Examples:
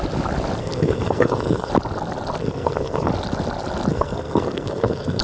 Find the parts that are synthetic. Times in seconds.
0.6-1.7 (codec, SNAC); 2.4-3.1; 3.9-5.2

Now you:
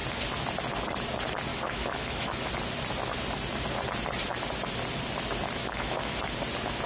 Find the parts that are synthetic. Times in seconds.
1.5-2.5 (autoencoder, DAC-VAE); 5.6-6.2

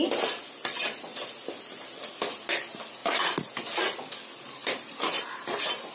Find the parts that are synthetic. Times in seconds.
3.0-3.5 (vocoder, BigVGAN v2); 4.6-5.2

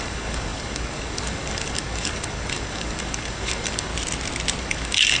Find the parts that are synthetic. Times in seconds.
0.0-3.9 (codec, DAC); 4.6-5.2

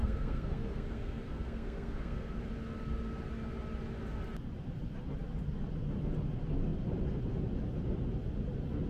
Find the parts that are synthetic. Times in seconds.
0.0-2.4 (codec, SNAC)